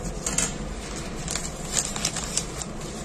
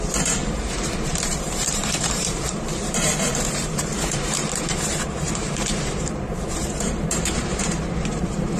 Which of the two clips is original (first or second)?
first